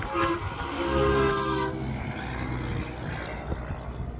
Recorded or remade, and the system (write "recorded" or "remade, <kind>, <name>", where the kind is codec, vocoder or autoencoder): recorded